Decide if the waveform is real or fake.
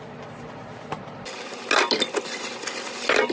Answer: real